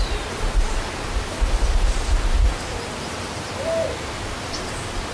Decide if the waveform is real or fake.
real